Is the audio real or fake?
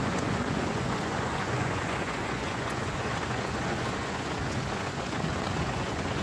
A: fake